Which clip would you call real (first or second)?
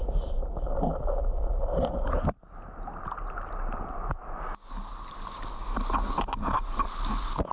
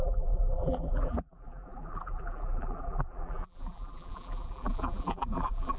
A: first